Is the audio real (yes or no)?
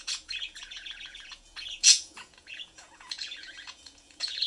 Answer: no